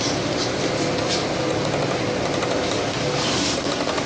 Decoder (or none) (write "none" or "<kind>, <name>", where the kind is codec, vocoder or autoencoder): none